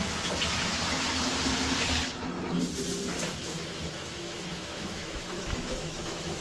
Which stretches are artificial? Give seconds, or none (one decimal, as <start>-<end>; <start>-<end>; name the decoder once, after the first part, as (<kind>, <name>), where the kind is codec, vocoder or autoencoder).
3.3-6.4 (autoencoder, DAC-VAE)